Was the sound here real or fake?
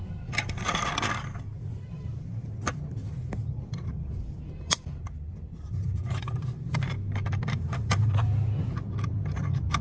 fake